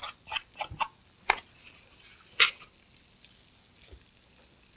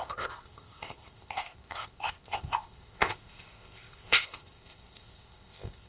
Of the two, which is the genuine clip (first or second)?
first